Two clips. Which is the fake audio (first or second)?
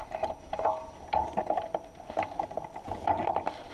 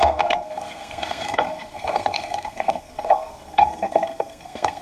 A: second